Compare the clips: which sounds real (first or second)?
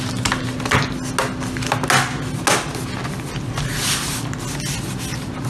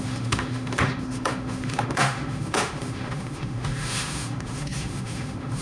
first